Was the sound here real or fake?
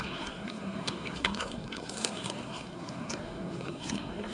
fake